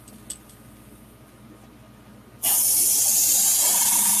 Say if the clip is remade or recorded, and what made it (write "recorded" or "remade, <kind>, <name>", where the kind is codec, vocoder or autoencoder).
recorded